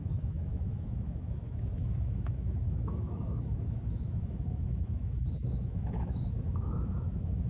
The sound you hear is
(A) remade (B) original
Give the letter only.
A